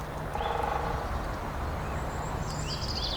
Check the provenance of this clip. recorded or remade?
recorded